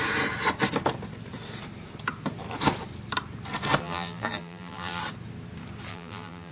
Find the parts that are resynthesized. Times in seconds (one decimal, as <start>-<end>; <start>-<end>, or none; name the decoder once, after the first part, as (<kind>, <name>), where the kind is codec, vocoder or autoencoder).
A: 3.8-5.0 (vocoder, BigVGAN v2); 5.9-6.5